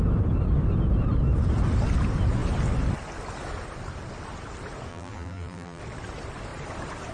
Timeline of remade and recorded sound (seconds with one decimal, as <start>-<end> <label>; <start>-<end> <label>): 0.0-4.9 recorded; 4.9-5.8 remade; 5.8-7.1 recorded